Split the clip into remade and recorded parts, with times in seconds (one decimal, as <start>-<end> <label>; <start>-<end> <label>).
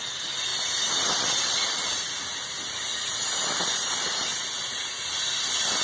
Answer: 0.0-5.8 recorded